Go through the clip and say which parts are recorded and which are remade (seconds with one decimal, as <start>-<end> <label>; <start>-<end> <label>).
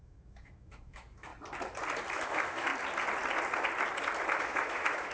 0.0-1.3 remade; 1.3-2.1 recorded; 2.1-2.7 remade; 2.7-4.3 recorded; 4.3-5.1 remade